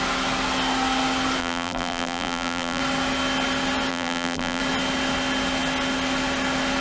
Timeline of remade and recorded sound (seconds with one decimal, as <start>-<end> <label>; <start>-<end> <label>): 0.0-1.4 recorded; 1.4-2.8 remade; 2.8-3.9 recorded; 3.9-4.6 remade; 4.6-6.8 recorded